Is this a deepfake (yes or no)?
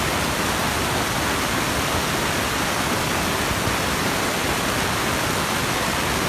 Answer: no